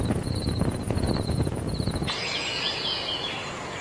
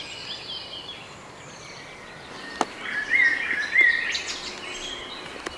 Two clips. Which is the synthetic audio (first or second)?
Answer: first